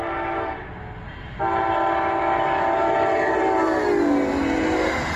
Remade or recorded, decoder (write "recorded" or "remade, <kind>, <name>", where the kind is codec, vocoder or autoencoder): recorded